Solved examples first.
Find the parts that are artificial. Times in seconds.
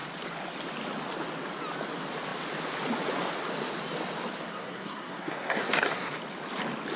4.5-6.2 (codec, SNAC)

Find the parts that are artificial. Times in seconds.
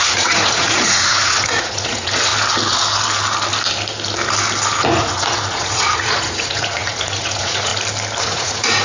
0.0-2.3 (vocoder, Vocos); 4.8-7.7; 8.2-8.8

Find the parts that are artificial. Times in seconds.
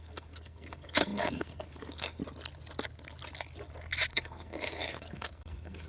0.0-2.2 (codec, SNAC); 4.1-5.9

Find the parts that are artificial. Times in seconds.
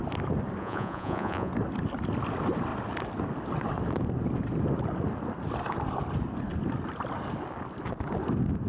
0.6-1.5 (vocoder, Vocos)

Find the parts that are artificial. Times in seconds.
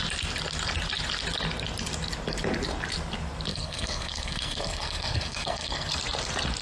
3.5-5.9 (codec, SNAC)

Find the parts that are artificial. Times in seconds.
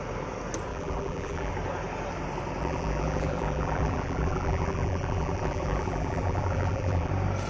0.7-1.5 (vocoder, BigVGAN v2); 2.6-7.1